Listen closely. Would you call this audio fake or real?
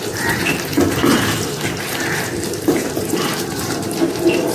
fake